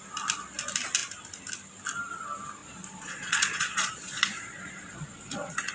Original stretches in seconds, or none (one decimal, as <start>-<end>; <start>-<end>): 0.0-2.6